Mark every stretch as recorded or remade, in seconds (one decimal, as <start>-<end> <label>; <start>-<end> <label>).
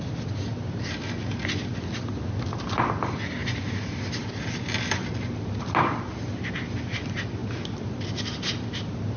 0.0-9.2 recorded